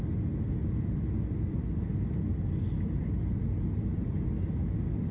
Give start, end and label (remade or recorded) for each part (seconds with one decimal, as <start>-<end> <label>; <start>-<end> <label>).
0.0-5.1 recorded

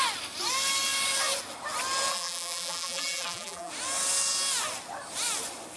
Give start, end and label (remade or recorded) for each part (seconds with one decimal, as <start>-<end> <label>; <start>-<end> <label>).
0.0-2.1 recorded; 2.1-3.7 remade; 3.7-5.8 recorded

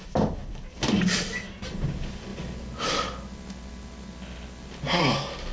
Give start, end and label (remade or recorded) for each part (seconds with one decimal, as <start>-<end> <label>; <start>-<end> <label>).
0.0-0.4 recorded; 0.4-1.2 remade; 1.2-5.5 recorded

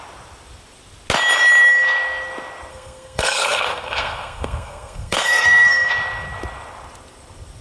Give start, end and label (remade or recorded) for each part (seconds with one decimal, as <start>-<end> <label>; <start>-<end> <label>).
0.0-2.7 recorded; 2.7-5.9 remade; 5.9-7.6 recorded